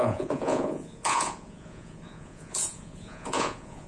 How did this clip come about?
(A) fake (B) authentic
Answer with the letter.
A